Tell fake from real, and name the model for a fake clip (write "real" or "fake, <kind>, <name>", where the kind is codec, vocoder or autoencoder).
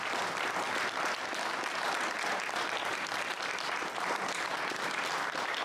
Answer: real